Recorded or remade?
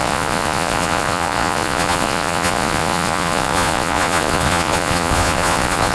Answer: remade